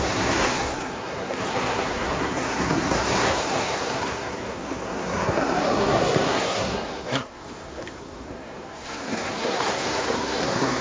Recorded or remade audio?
remade